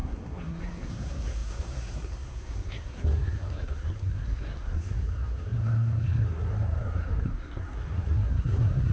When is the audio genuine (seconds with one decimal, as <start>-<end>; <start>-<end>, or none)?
none